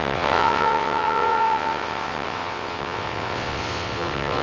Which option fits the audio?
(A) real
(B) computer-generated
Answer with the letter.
B